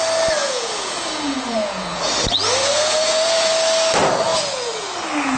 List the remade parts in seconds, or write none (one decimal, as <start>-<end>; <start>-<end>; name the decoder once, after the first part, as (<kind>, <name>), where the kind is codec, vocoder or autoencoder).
0.4-2.1 (vocoder, Vocos); 2.6-3.5; 4.3-4.9